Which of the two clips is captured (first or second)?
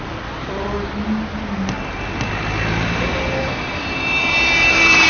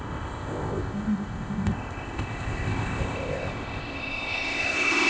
first